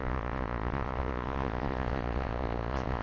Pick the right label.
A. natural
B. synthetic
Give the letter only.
B